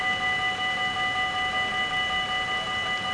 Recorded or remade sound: recorded